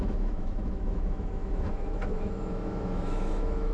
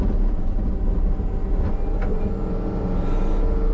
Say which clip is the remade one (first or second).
first